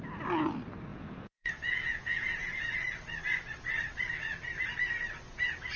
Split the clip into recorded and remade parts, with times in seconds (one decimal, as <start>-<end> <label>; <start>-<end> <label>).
0.0-0.9 recorded; 0.9-2.7 remade; 2.7-5.8 recorded

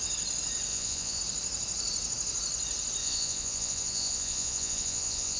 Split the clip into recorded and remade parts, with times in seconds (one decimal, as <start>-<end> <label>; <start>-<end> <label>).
0.0-0.7 recorded; 0.7-1.2 remade; 1.2-3.0 recorded; 3.0-5.4 remade

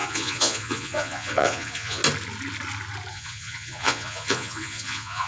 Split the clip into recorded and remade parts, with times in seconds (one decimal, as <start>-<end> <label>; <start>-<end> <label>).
0.0-2.0 remade; 2.0-3.1 recorded; 3.1-5.3 remade

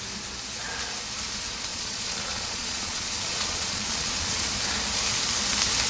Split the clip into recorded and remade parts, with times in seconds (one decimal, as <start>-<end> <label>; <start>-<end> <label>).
0.0-1.7 recorded; 1.7-4.4 remade; 4.4-5.9 recorded

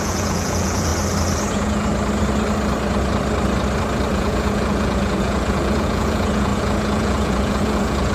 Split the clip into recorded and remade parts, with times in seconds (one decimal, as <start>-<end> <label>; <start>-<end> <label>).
0.0-0.9 remade; 0.9-1.5 recorded; 1.5-1.9 remade; 1.9-4.1 recorded; 4.1-8.1 remade

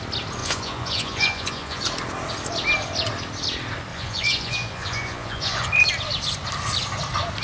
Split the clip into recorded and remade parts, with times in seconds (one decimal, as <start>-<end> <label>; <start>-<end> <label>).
0.0-0.4 recorded; 0.4-1.8 remade; 1.8-3.9 recorded; 3.9-5.7 remade; 5.7-7.4 recorded

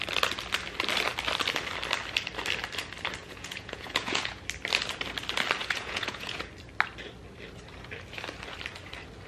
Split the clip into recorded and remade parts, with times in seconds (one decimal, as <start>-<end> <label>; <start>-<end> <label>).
0.0-3.2 recorded; 3.2-4.4 remade; 4.4-5.6 recorded; 5.6-6.5 remade; 6.5-9.3 recorded

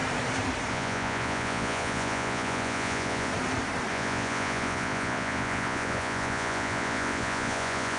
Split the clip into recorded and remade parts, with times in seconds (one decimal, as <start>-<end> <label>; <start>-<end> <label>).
0.0-0.7 recorded; 0.7-3.3 remade; 3.3-3.9 recorded; 3.9-8.0 remade